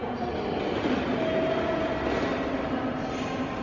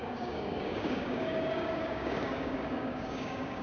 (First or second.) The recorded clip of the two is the first